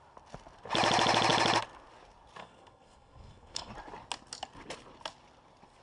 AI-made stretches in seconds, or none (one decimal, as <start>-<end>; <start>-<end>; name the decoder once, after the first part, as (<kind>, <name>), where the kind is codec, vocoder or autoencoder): 2.4-3.7 (codec, SNAC)